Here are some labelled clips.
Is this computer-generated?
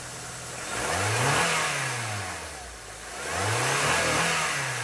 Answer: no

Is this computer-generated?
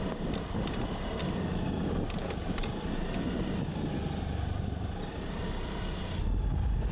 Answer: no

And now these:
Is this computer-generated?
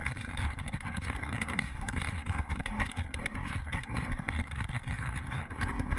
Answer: yes